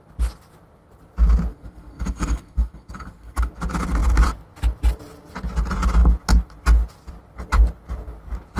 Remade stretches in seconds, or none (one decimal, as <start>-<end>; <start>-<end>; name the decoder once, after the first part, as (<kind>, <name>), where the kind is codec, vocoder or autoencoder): 1.5-3.5 (codec, SNAC)